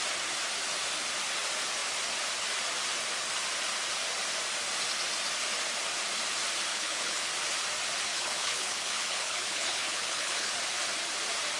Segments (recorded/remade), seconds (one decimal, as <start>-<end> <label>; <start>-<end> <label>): 0.0-6.7 recorded; 6.7-7.3 remade; 7.3-8.1 recorded; 8.1-10.5 remade; 10.5-11.6 recorded